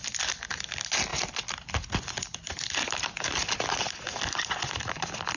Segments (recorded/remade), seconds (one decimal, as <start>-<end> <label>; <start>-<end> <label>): 0.0-0.7 remade; 0.7-1.1 recorded; 1.1-4.0 remade; 4.0-5.4 recorded